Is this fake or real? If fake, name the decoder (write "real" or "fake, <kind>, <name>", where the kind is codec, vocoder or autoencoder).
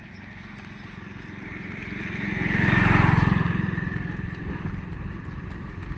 real